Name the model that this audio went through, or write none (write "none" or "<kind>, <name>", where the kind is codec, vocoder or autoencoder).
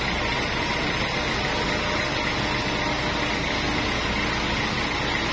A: none